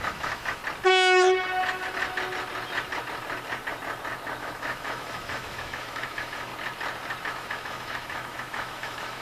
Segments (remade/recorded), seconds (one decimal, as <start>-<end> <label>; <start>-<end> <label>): 0.0-0.6 remade; 0.6-4.4 recorded; 4.4-6.5 remade; 6.5-7.3 recorded; 7.3-9.2 remade